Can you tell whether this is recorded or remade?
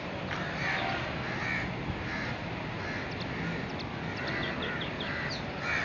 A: recorded